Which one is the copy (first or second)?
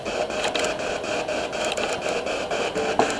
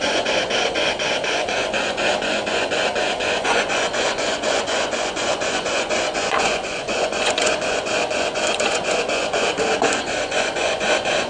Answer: second